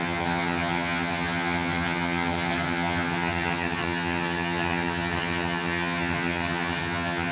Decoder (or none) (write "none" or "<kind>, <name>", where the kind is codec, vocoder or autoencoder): vocoder, HiFi-GAN